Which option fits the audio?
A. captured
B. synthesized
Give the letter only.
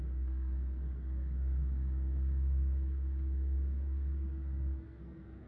B